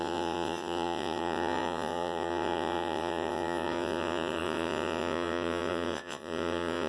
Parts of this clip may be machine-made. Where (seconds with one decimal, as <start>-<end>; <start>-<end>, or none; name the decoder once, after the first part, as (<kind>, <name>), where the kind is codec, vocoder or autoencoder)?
0.0-6.9 (vocoder, WaveNeXt)